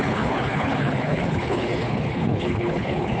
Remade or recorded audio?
remade